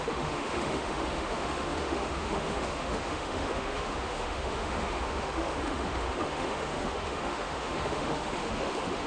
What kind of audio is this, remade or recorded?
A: remade